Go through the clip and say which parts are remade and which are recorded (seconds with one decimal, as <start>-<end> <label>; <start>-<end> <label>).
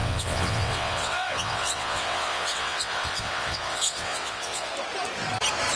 0.0-4.7 remade; 4.7-5.8 recorded